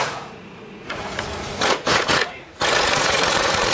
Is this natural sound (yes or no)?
no